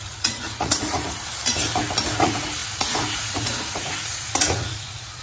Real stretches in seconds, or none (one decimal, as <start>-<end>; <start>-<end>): 1.3-2.2